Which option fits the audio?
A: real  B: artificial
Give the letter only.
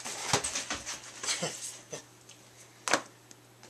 A